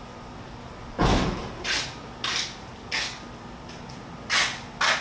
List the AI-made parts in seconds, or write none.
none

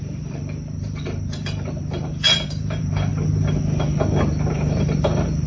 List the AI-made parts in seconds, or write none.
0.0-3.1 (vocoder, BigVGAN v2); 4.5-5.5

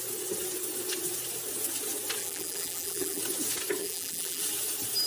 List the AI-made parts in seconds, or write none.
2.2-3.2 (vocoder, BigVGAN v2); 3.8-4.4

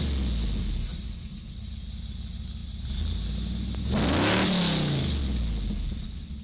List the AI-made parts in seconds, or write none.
0.9-1.5 (vocoder, BigVGAN v2)

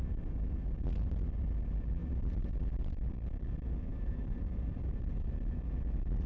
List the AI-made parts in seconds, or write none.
3.9-5.0 (vocoder, BigVGAN v2)

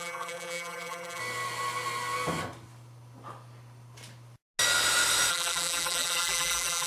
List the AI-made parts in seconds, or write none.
0.0-1.2 (vocoder, BigVGAN v2); 5.3-6.9

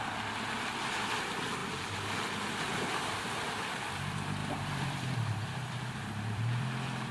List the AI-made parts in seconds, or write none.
1.6-3.2 (vocoder, BigVGAN v2); 4.4-7.1